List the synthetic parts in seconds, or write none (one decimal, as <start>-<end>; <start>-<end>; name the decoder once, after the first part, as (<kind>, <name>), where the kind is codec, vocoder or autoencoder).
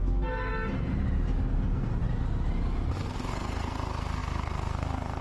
0.0-0.5 (codec, SNAC); 1.5-2.0; 3.0-5.2